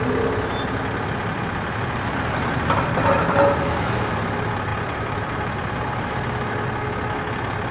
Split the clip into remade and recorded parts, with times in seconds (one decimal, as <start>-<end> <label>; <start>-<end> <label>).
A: 0.0-3.1 recorded; 3.1-3.9 remade; 3.9-4.7 recorded; 4.7-6.2 remade; 6.2-7.7 recorded

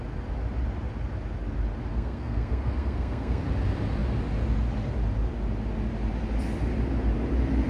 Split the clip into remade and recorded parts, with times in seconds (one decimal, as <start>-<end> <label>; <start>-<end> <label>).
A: 0.0-1.9 recorded; 1.9-3.4 remade; 3.4-7.7 recorded

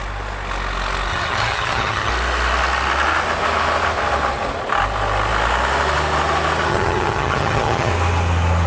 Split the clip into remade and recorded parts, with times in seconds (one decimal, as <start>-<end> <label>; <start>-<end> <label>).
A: 0.0-1.1 recorded; 1.1-2.1 remade; 2.1-6.7 recorded; 6.7-7.9 remade; 7.9-8.7 recorded

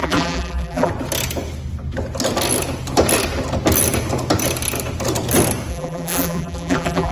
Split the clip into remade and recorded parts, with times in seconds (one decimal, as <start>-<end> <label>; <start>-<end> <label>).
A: 0.0-0.9 remade; 0.9-5.7 recorded; 5.7-7.1 remade

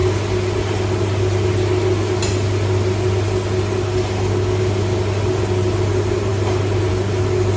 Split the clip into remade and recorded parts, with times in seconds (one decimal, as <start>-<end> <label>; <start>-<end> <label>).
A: 0.0-7.6 recorded

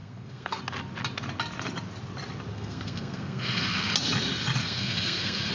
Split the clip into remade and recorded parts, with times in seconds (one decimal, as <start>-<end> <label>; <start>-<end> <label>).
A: 0.0-0.6 remade; 0.6-2.5 recorded; 2.5-3.9 remade; 3.9-4.6 recorded; 4.6-5.5 remade

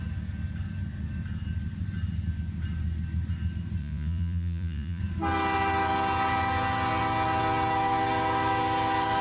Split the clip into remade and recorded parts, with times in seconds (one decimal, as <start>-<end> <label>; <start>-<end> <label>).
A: 0.0-3.8 recorded; 3.8-5.0 remade; 5.0-9.2 recorded